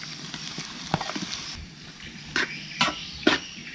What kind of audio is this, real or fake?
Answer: real